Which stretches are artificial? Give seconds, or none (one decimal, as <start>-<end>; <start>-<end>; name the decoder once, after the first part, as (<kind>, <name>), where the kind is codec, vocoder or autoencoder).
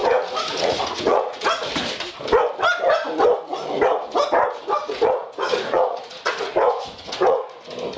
0.0-1.7 (vocoder, Vocos); 4.8-7.6